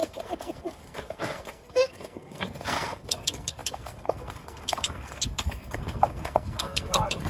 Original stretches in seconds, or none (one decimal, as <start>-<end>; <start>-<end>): none